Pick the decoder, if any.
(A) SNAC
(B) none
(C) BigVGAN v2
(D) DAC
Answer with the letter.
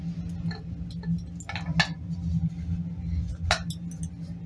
B